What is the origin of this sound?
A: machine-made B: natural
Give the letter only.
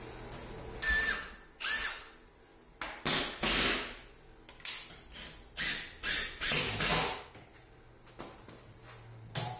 B